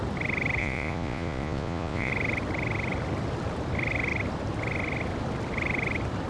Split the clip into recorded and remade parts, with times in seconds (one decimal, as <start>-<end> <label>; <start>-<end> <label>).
0.0-0.6 recorded; 0.6-2.1 remade; 2.1-6.3 recorded